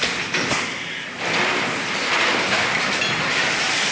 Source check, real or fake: real